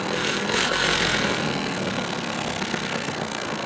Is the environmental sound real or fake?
fake